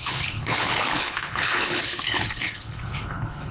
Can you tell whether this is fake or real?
fake